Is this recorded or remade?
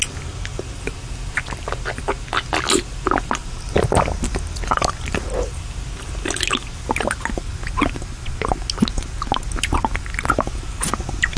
recorded